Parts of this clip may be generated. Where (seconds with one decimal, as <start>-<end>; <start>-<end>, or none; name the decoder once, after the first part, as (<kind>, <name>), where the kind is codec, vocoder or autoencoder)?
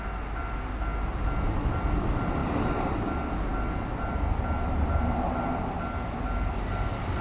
none